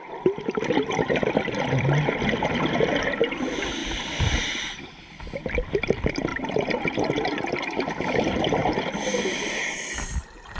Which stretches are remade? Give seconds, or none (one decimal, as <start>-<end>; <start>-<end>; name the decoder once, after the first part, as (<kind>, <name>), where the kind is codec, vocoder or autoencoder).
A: 3.8-5.0 (vocoder, BigVGAN v2); 6.3-7.4